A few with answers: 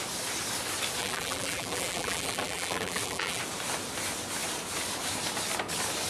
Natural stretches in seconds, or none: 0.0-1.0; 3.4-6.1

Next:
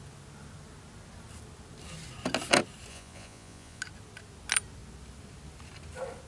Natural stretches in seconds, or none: 0.0-2.9; 3.8-6.3

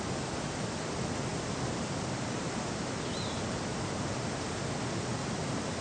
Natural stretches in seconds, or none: 0.0-5.8